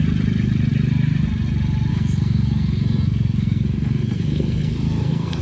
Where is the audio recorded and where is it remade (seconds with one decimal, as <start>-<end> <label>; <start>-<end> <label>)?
0.0-1.9 recorded; 1.9-5.4 remade